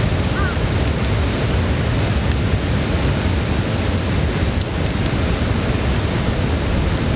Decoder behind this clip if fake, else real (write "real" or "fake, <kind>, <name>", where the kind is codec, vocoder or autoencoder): real